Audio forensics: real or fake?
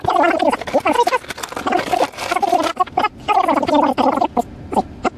real